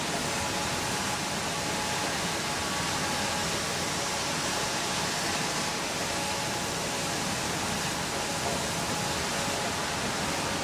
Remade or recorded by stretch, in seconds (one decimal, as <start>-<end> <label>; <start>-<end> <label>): 0.0-10.6 recorded